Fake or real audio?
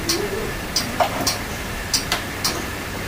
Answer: real